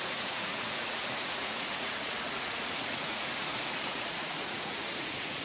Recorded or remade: remade